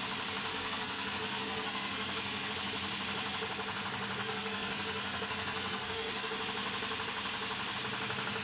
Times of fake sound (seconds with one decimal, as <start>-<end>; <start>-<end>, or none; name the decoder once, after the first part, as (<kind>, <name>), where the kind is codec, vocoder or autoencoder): 0.5-2.5 (codec, SNAC); 4.2-6.3